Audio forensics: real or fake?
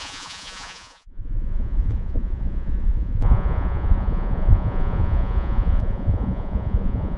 fake